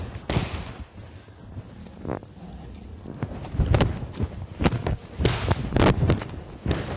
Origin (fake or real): real